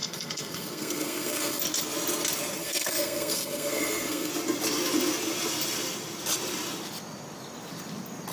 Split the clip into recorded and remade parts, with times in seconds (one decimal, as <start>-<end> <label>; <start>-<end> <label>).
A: 0.0-1.6 remade; 1.6-2.6 recorded; 2.6-4.3 remade; 4.3-8.3 recorded